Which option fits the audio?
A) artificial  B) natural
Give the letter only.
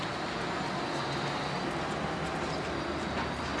B